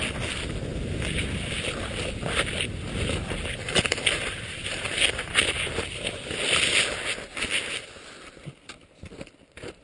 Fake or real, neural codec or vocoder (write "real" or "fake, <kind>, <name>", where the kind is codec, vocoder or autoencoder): real